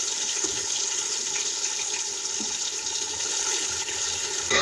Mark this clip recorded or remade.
remade